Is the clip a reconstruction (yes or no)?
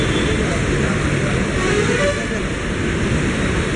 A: no